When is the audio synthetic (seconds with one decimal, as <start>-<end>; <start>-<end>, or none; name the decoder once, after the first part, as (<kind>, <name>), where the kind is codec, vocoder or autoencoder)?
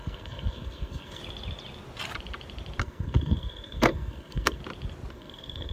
0.0-1.2 (codec, SNAC); 2.8-4.6; 5.1-5.7